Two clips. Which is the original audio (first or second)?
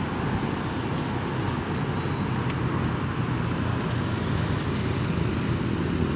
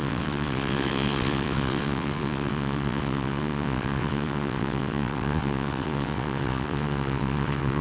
first